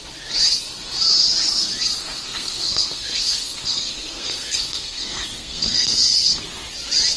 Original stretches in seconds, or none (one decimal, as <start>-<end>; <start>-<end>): 0.0-2.0; 6.3-7.2